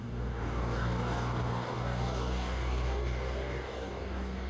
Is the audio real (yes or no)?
no